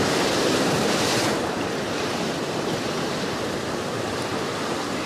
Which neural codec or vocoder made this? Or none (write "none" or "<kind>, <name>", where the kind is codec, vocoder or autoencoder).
vocoder, BigVGAN v2